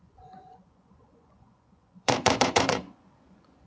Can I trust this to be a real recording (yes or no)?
no